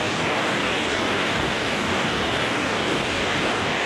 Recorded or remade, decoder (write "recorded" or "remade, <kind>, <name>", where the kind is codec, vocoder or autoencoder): remade, codec, DAC